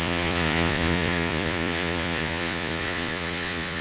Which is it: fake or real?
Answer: fake